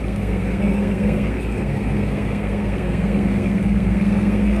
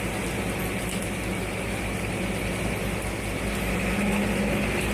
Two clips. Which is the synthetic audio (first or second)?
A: first